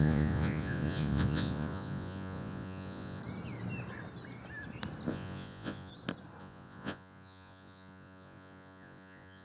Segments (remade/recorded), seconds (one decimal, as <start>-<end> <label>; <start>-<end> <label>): 0.0-3.2 remade; 3.2-5.1 recorded; 5.1-5.9 remade; 5.9-6.4 recorded; 6.4-9.4 remade